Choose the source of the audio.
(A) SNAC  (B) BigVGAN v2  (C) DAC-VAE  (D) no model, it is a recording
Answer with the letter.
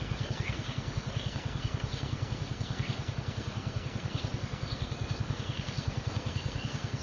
A